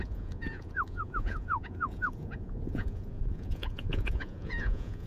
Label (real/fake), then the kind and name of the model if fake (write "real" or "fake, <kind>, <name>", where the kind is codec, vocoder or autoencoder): fake, vocoder, Vocos